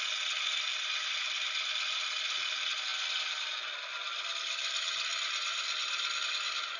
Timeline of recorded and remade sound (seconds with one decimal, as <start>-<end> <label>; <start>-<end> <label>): 0.0-6.8 recorded